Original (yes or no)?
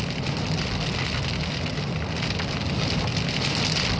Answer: yes